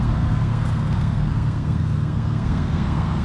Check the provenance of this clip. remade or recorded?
remade